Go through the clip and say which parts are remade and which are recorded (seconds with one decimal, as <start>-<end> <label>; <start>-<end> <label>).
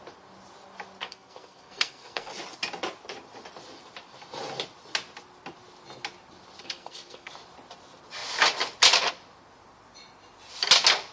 0.0-1.0 recorded; 1.0-2.3 remade; 2.3-6.6 recorded; 6.6-7.3 remade; 7.3-11.1 recorded